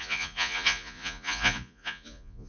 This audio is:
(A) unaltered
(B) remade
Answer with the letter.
B